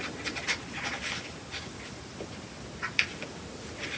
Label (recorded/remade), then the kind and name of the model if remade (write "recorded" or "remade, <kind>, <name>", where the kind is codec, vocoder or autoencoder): recorded